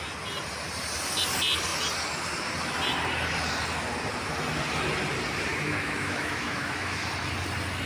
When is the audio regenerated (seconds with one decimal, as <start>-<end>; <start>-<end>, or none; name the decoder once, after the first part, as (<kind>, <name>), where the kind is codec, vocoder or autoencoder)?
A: 5.5-7.1 (autoencoder, DAC-VAE)